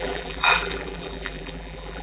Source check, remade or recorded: remade